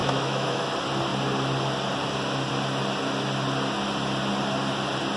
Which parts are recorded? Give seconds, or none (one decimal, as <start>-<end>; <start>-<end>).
0.7-5.2